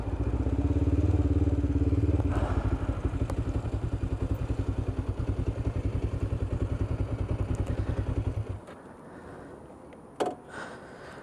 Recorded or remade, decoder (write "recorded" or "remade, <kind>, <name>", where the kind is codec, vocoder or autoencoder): recorded